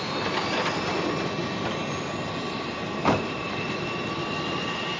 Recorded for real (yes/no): yes